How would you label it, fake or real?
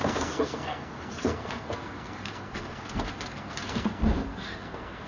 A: fake